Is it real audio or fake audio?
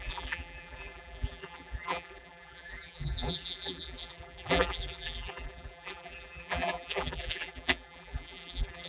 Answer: fake